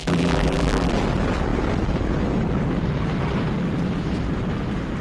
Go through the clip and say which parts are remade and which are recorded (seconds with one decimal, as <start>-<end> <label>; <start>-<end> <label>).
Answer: 0.0-0.9 remade; 0.9-5.0 recorded